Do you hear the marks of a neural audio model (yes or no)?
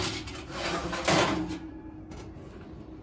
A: no